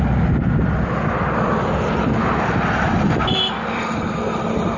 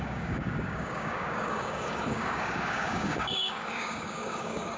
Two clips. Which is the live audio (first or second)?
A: first